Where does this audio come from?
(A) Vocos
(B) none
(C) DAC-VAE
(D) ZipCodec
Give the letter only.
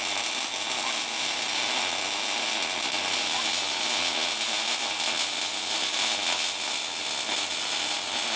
B